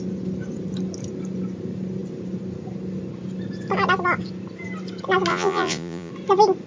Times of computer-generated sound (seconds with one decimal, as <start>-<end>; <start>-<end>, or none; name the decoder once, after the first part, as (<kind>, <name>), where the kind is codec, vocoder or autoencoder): 5.3-6.1 (vocoder, Vocos)